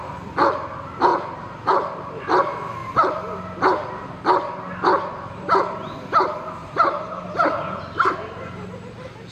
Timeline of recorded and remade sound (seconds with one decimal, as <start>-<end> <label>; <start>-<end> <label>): 0.0-1.1 recorded; 1.1-2.2 remade; 2.2-6.6 recorded; 6.6-7.2 remade; 7.2-9.3 recorded

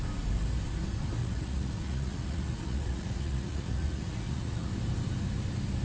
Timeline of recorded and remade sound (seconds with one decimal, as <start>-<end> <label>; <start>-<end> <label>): 0.0-1.2 recorded; 1.2-4.7 remade; 4.7-5.8 recorded

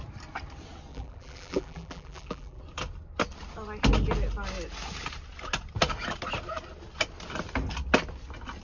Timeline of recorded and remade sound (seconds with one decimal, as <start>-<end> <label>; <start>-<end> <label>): 0.0-0.9 recorded; 0.9-2.6 remade; 2.6-8.6 recorded

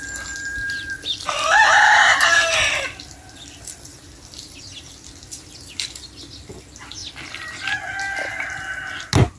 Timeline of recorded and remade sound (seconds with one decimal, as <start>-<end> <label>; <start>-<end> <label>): 0.0-0.5 recorded; 0.5-4.9 remade; 4.9-9.4 recorded